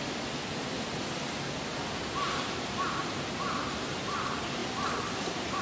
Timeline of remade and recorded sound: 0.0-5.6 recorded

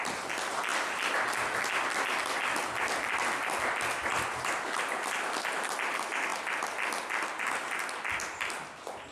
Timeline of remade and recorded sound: 0.0-9.1 recorded

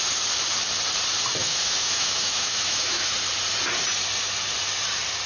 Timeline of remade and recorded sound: 0.0-1.4 recorded; 1.4-3.1 remade; 3.1-5.3 recorded